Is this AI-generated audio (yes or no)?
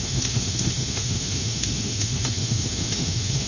yes